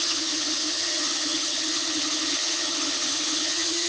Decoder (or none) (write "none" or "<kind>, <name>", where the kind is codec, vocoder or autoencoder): vocoder, HiFi-GAN